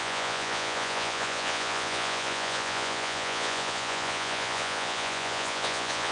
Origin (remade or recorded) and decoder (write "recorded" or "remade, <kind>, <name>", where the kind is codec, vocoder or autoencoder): remade, vocoder, Vocos